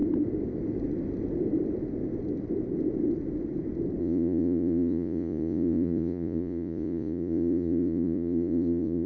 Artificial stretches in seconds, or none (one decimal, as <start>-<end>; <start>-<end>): 4.0-9.1